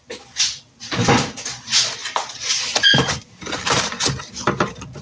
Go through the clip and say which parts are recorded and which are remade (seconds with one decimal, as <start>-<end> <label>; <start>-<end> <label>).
0.0-5.0 recorded